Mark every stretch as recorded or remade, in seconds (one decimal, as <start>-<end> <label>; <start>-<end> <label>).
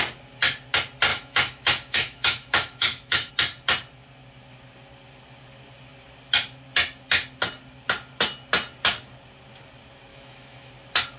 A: 0.0-1.1 recorded; 1.1-3.3 remade; 3.3-10.1 recorded; 10.1-10.7 remade; 10.7-11.2 recorded